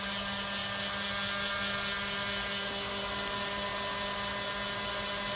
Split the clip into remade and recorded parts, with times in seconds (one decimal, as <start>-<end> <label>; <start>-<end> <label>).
0.0-5.4 recorded